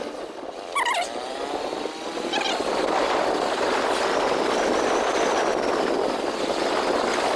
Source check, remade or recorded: recorded